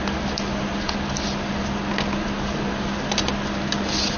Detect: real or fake real